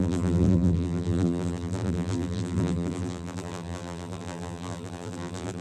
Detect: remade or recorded remade